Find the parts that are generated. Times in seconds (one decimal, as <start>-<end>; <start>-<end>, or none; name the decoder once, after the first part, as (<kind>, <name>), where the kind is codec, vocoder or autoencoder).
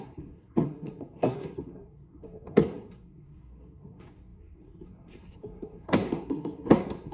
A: 0.0-7.1 (codec, SNAC)